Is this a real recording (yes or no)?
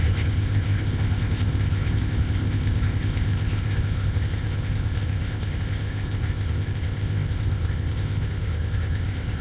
no